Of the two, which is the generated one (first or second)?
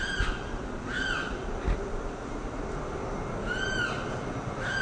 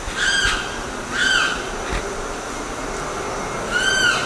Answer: first